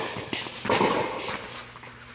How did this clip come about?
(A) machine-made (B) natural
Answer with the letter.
B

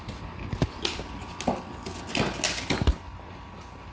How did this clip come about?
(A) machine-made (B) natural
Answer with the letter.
B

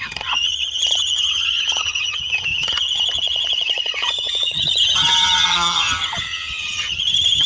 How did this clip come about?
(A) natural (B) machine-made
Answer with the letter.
B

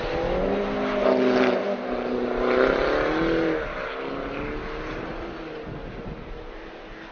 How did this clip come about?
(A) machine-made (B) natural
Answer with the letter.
B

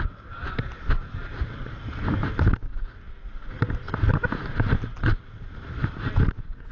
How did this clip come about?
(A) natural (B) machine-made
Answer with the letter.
A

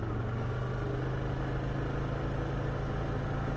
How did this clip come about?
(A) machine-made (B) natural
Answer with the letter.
B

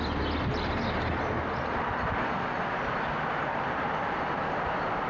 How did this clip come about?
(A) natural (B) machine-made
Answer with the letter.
A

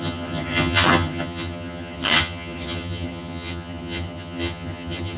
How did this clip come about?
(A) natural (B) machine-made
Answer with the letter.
B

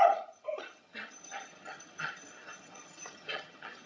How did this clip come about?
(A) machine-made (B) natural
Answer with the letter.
A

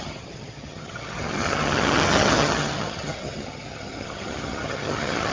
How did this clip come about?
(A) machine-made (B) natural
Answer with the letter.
A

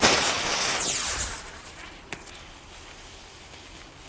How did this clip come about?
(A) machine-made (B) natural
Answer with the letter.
B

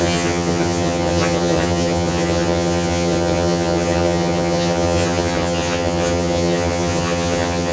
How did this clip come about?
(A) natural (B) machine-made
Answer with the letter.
B